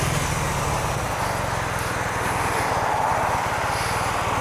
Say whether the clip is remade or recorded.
recorded